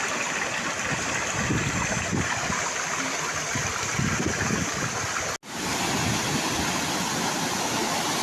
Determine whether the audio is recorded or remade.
recorded